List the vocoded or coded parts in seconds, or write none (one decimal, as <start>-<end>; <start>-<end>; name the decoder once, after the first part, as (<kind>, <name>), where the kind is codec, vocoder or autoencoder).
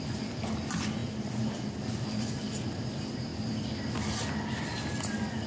none